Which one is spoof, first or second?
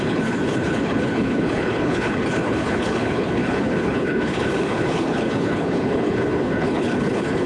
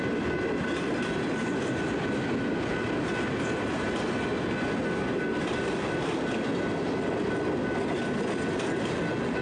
first